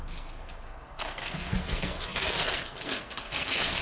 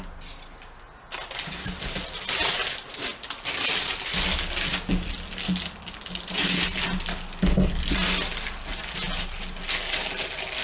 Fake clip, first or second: first